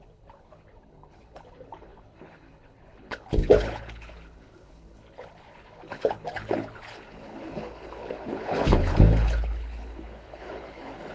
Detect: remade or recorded remade